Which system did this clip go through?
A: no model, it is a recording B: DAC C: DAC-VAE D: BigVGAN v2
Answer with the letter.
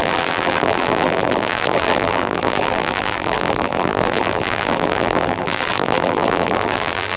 D